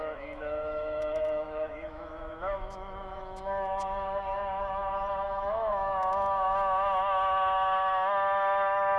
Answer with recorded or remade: remade